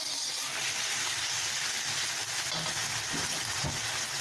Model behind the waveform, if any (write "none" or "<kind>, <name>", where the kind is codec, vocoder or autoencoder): none